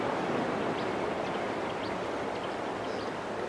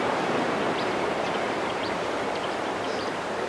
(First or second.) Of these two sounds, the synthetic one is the second